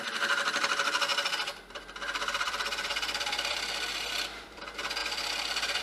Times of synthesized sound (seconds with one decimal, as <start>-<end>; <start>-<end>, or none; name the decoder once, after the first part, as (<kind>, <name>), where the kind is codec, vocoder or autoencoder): 1.1-4.6 (vocoder, BigVGAN v2); 5.0-5.8